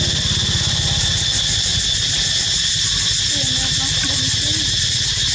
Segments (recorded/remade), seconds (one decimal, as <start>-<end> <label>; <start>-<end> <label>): 0.0-1.7 remade; 1.7-4.8 recorded; 4.8-5.3 remade